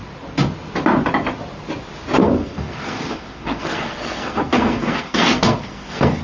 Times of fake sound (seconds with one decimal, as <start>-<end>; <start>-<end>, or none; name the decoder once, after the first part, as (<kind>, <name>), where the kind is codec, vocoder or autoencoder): 2.2-6.2 (codec, SNAC)